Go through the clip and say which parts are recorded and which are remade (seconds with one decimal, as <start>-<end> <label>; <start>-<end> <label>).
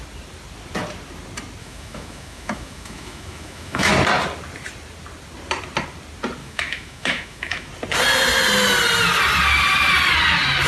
0.0-1.6 recorded; 1.6-3.9 remade; 3.9-6.4 recorded; 6.4-7.7 remade; 7.7-10.7 recorded